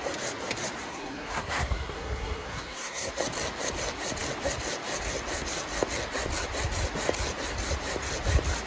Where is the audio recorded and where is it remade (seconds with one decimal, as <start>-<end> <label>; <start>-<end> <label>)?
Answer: 0.0-0.9 recorded; 0.9-3.1 remade; 3.1-8.7 recorded